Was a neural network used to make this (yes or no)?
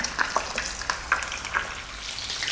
no